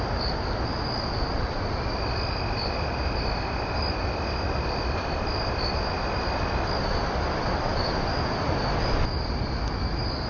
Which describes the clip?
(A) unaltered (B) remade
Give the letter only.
A